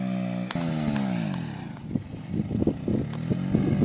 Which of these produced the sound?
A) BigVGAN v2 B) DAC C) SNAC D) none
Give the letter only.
D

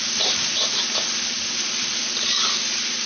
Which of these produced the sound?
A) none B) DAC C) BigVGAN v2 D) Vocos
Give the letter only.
A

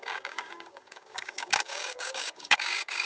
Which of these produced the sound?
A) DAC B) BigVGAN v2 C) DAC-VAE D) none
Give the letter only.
A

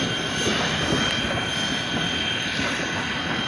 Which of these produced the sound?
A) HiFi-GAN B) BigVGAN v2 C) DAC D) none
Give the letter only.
D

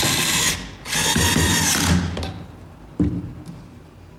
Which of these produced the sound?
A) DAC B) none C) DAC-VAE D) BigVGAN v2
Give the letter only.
B